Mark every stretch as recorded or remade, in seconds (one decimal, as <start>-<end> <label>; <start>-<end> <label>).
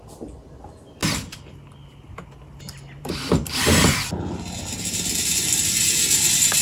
0.0-1.0 remade; 1.0-3.0 recorded; 3.0-4.1 remade; 4.1-5.1 recorded; 5.1-6.6 remade